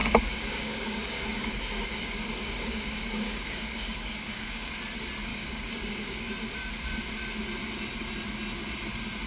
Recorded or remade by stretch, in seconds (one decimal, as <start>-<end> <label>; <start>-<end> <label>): 0.0-4.7 remade; 4.7-5.3 recorded; 5.3-6.3 remade; 6.3-9.3 recorded